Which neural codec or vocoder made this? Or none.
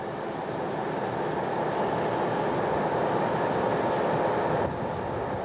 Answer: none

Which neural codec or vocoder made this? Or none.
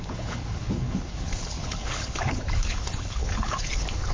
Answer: codec, HILCodec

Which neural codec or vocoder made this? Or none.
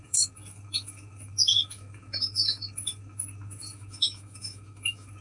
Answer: autoencoder, DAC-VAE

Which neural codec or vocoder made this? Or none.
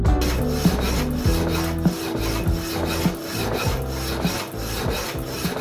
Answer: none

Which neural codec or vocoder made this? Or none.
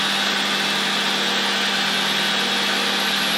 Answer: none